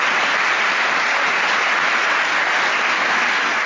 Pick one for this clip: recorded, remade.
recorded